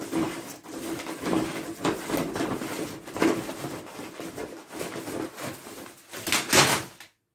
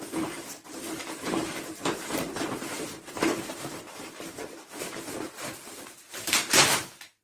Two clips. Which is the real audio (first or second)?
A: first